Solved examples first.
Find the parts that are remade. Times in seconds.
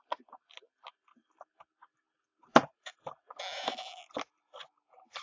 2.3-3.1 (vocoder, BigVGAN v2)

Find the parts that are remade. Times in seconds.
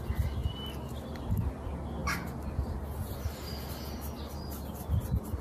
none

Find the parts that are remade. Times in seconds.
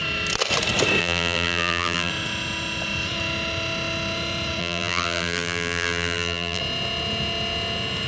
1.0-2.1 (vocoder, BigVGAN v2); 4.6-6.6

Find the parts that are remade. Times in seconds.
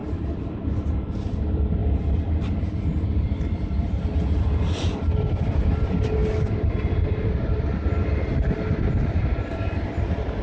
0.0-6.2 (vocoder, BigVGAN v2); 6.9-10.4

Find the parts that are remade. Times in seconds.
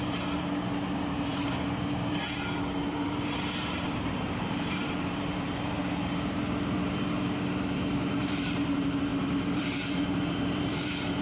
0.0-11.2 (vocoder, BigVGAN v2)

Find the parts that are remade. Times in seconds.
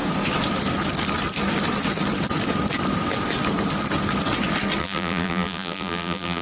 4.8-6.4 (vocoder, BigVGAN v2)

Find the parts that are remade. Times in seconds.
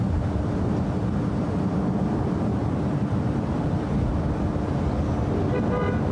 2.5-4.3 (vocoder, BigVGAN v2)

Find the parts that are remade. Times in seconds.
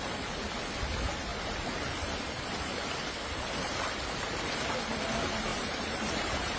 5.5-6.6 (vocoder, BigVGAN v2)